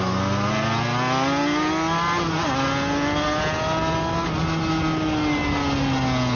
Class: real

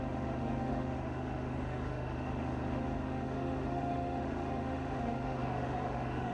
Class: fake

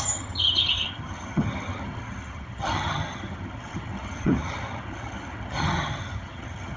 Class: fake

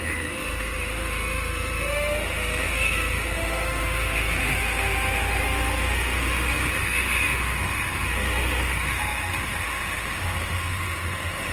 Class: fake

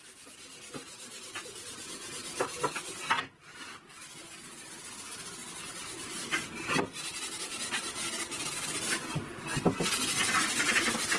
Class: real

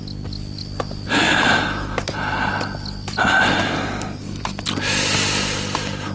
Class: real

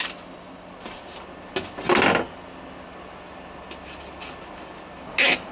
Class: real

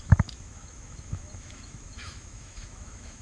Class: fake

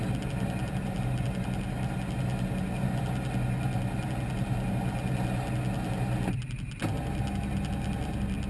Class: real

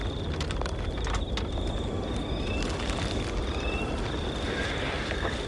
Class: real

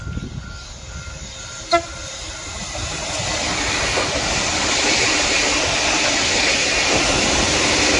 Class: real